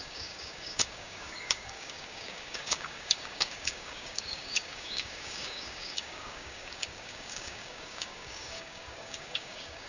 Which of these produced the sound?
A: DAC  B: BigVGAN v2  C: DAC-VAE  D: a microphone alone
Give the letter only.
A